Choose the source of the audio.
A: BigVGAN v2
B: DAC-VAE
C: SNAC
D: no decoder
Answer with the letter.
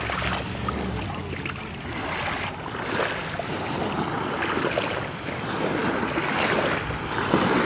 D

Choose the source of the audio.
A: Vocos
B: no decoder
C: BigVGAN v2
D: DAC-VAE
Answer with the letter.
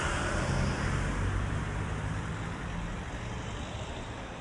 C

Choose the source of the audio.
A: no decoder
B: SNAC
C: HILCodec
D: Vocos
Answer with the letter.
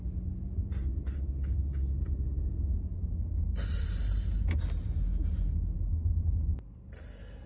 A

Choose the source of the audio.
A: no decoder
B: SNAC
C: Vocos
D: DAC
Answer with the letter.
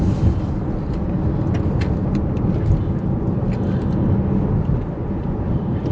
A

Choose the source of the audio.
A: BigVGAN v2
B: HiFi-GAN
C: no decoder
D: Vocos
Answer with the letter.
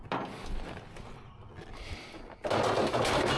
C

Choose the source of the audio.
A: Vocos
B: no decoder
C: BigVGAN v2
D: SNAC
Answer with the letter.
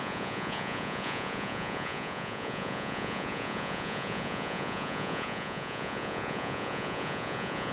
A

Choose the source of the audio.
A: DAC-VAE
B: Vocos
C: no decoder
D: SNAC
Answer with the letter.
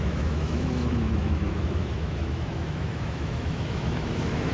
A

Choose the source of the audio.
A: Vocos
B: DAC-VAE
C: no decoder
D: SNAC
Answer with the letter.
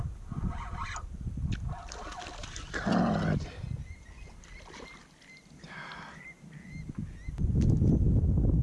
C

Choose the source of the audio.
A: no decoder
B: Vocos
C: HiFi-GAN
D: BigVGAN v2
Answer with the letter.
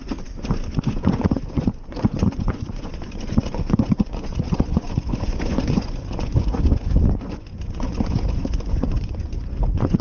B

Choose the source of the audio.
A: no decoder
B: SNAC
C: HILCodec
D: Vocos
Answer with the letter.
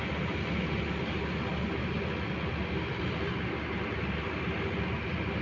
A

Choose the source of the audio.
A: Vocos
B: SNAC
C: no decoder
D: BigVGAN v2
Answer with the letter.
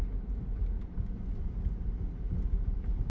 C